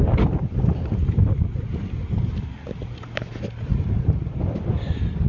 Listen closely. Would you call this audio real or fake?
real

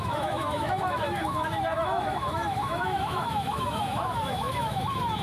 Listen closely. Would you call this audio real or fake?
fake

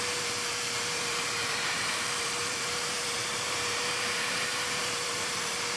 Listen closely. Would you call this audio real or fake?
fake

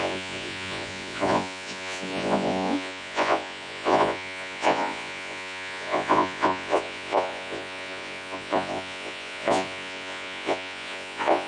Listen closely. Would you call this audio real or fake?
fake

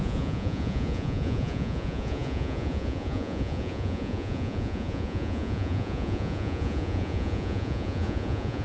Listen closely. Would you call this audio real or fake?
fake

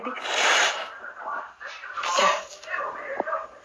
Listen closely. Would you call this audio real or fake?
fake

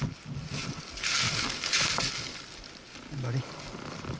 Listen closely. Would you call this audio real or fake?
real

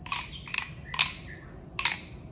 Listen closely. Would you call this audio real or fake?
real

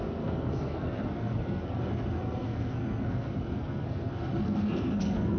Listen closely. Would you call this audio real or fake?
fake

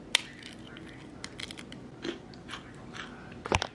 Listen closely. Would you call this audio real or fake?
real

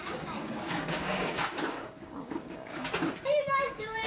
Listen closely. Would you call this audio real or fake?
fake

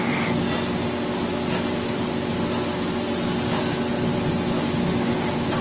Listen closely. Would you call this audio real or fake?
real